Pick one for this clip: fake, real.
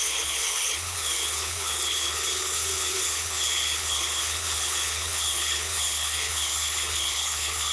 fake